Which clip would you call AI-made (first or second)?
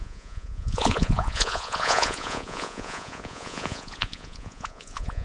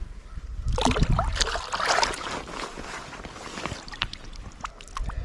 first